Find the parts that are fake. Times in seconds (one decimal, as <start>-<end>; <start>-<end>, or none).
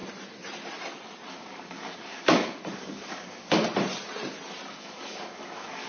1.3-3.6; 4.7-5.9